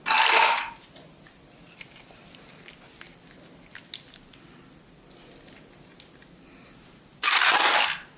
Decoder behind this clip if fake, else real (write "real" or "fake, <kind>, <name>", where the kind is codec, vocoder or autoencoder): real